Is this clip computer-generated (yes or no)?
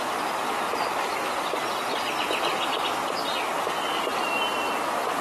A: no